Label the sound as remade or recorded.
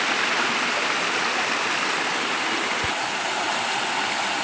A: recorded